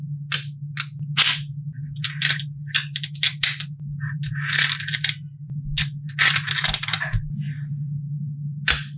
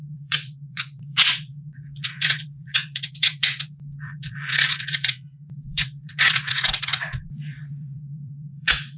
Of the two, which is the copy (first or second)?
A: second